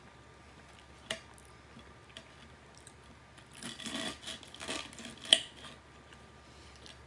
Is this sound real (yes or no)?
yes